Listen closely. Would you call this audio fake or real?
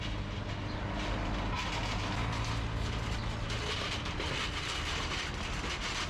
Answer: real